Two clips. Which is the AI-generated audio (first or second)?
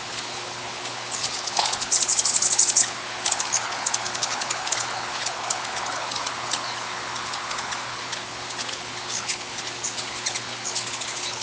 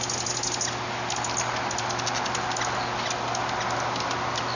first